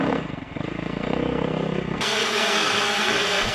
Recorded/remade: remade